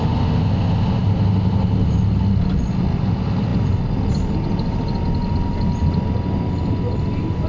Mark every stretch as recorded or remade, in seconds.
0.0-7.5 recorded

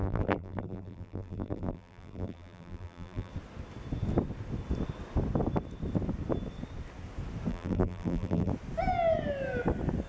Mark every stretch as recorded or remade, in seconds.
0.0-3.3 remade; 3.3-7.5 recorded; 7.5-8.5 remade; 8.5-10.1 recorded

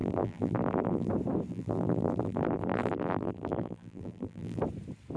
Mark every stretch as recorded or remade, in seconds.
0.0-1.1 remade; 1.1-1.5 recorded; 1.5-4.6 remade; 4.6-5.2 recorded

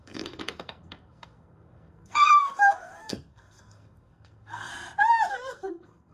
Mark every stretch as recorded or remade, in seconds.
0.0-4.7 remade; 4.7-5.3 recorded; 5.3-6.1 remade